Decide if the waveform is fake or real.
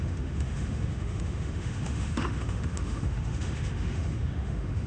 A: fake